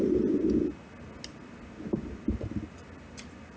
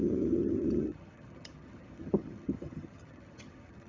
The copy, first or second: second